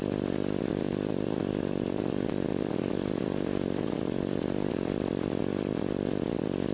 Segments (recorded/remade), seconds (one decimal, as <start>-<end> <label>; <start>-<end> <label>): 0.0-0.7 recorded; 0.7-4.7 remade; 4.7-6.7 recorded